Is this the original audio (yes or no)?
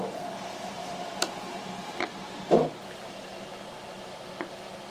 yes